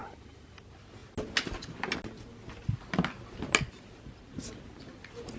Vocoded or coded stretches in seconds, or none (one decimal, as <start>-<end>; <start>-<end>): none